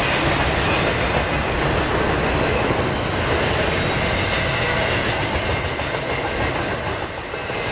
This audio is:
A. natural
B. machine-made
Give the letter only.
A